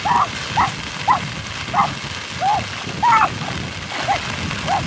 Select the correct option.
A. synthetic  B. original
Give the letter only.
B